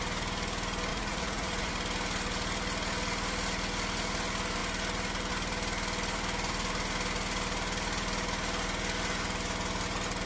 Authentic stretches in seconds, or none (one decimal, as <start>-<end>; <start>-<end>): 0.0-0.9; 1.7-10.3